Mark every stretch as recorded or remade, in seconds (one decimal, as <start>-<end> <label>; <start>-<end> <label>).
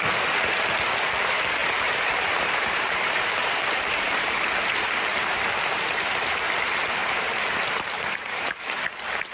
0.0-1.6 recorded; 1.6-4.5 remade; 4.5-5.1 recorded; 5.1-6.4 remade; 6.4-7.0 recorded; 7.0-8.6 remade; 8.6-9.3 recorded